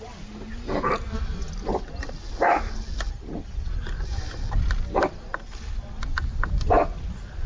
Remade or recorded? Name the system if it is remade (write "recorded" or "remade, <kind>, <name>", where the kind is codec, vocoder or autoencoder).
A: recorded